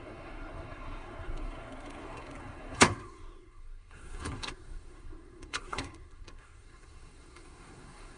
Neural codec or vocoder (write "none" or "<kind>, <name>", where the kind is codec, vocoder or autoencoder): codec, SNAC